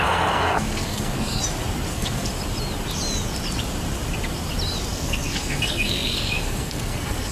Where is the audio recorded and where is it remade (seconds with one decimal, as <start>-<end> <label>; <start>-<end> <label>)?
0.0-1.4 remade; 1.4-1.9 recorded; 1.9-2.3 remade; 2.3-4.9 recorded; 4.9-7.3 remade